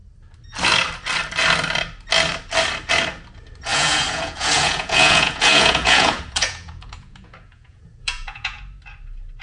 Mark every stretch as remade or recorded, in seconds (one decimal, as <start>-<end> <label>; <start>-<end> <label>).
0.0-3.7 recorded; 3.7-8.6 remade; 8.6-9.4 recorded